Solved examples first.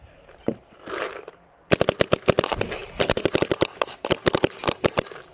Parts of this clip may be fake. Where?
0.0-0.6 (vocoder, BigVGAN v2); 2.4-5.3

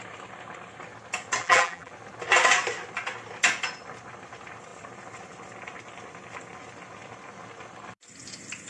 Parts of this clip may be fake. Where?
1.4-1.9 (vocoder, BigVGAN v2)

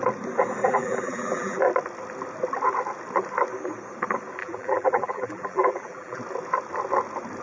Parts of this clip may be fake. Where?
0.6-1.6 (vocoder, BigVGAN v2); 4.4-6.2

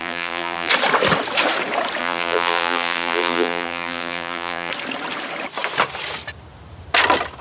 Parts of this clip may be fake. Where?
0.0-0.7 (vocoder, BigVGAN v2); 2.0-4.7

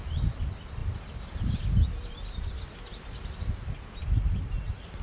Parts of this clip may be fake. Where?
0.8-1.6 (vocoder, BigVGAN v2)